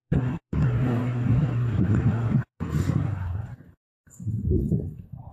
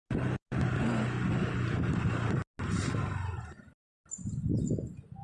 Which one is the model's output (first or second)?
first